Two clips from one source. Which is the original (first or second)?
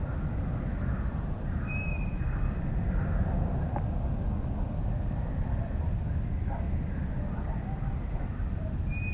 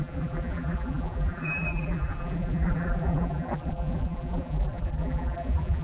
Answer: first